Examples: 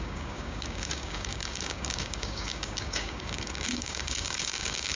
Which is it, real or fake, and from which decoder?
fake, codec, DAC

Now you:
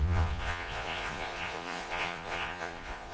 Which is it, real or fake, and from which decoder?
fake, vocoder, Vocos